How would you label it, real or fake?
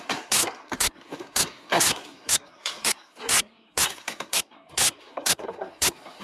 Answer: fake